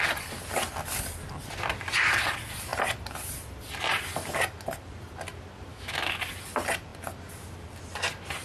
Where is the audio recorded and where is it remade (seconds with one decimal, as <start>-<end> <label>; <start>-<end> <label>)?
0.0-5.7 recorded; 5.7-6.2 remade; 6.2-8.4 recorded

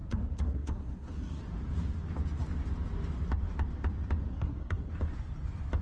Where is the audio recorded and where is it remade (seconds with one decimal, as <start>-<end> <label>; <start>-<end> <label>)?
0.0-1.4 remade; 1.4-4.3 recorded; 4.3-4.9 remade; 4.9-5.8 recorded

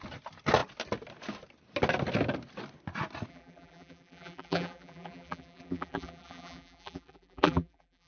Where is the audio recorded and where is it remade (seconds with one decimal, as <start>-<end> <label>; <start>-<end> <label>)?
0.0-3.3 recorded; 3.3-8.1 remade

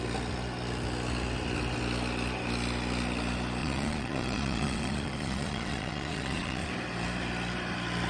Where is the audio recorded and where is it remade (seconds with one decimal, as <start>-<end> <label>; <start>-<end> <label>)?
0.0-3.6 recorded; 3.6-6.7 remade; 6.7-8.1 recorded

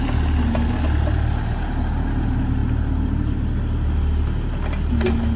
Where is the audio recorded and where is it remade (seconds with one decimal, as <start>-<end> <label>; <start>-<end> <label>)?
0.0-5.4 recorded

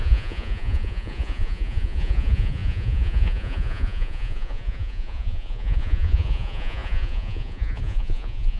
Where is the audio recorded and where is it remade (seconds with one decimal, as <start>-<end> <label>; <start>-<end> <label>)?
0.0-8.6 remade

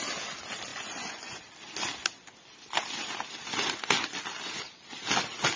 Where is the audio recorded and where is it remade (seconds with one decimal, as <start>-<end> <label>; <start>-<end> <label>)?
0.0-0.7 recorded; 0.7-1.4 remade; 1.4-5.6 recorded

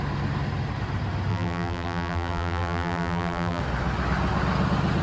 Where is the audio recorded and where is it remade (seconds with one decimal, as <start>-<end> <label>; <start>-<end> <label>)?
0.0-1.3 recorded; 1.3-3.6 remade; 3.6-5.0 recorded